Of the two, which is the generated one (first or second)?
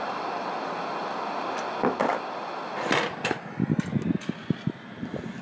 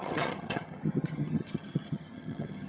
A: second